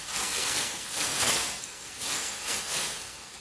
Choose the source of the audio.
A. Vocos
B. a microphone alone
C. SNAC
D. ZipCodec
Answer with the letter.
C